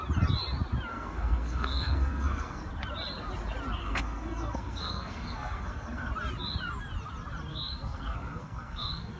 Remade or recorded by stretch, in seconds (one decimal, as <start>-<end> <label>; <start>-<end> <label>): 0.0-0.9 recorded; 0.9-2.7 remade; 2.7-3.8 recorded; 3.8-6.1 remade; 6.1-7.5 recorded; 7.5-9.2 remade